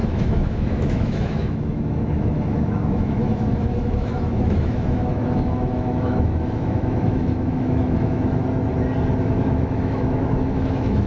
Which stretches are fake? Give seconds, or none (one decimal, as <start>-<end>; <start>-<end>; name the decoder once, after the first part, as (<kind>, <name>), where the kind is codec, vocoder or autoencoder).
0.0-8.4 (autoencoder, DAC-VAE); 9.2-11.1